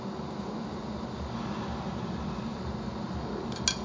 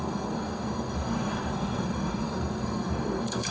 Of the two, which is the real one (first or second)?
first